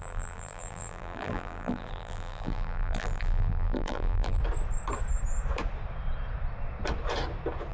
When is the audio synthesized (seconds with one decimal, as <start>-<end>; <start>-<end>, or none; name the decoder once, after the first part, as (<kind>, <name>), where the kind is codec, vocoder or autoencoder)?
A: 0.0-4.4 (vocoder, BigVGAN v2)